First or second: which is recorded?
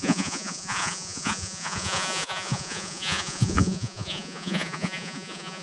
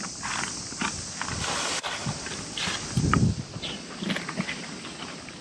second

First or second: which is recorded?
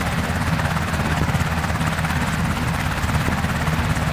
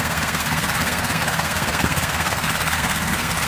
first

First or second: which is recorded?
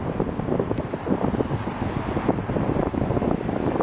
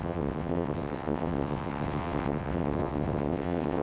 first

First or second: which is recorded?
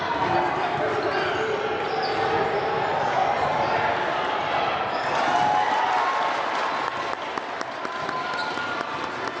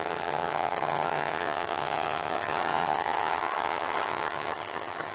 first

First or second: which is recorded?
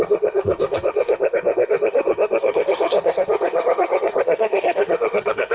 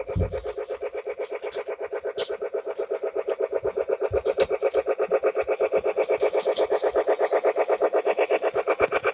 second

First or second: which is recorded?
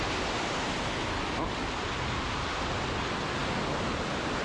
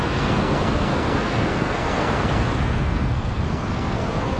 first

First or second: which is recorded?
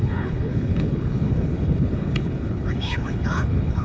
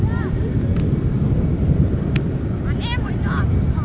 second